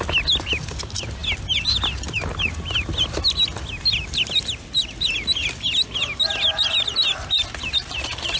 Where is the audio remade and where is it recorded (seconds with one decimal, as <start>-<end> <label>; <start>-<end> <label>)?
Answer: 0.0-8.4 recorded